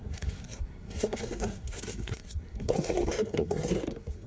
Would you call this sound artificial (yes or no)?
yes